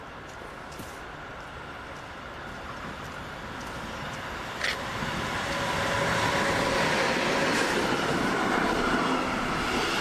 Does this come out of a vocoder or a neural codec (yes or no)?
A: no